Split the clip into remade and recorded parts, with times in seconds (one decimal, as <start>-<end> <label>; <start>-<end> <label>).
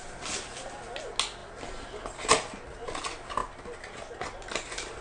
0.0-1.4 recorded; 1.4-2.6 remade; 2.6-5.0 recorded